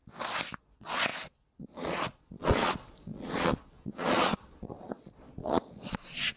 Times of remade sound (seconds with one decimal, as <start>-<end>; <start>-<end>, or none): 0.6-6.4